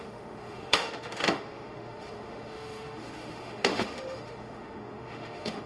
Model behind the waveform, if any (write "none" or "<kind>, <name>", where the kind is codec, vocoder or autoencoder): autoencoder, DAC-VAE